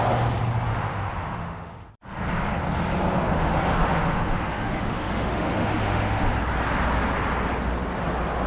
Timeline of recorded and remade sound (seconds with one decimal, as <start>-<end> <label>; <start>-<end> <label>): 0.0-0.7 recorded; 0.7-1.9 remade; 1.9-3.2 recorded; 3.2-6.2 remade; 6.2-8.5 recorded